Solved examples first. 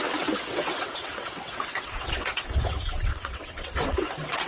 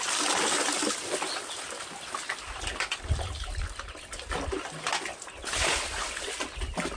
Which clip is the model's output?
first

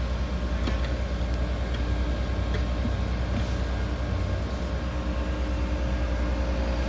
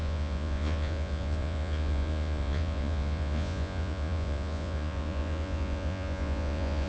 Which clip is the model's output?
second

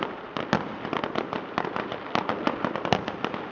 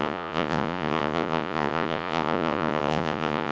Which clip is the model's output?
second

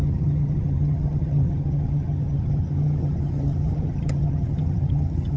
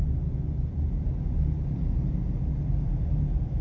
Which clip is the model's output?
first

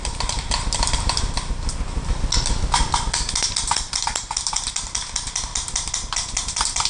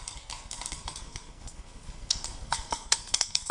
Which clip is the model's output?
second